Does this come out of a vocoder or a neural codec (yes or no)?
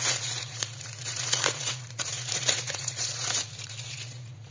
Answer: yes